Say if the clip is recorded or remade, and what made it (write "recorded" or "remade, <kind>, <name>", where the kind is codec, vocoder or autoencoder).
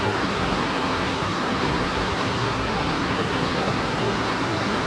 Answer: remade, codec, SNAC